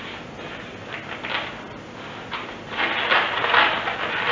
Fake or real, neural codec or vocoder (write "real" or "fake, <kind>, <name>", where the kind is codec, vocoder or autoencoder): real